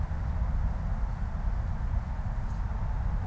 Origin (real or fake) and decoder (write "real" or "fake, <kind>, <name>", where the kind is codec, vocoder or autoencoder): real